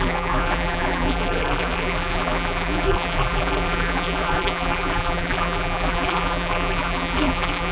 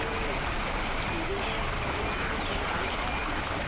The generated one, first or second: first